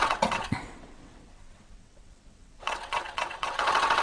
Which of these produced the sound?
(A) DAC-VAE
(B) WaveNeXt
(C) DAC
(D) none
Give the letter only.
B